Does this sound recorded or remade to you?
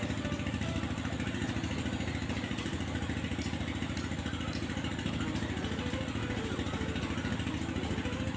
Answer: recorded